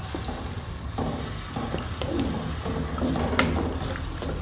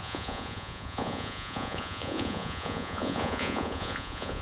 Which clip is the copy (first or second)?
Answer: second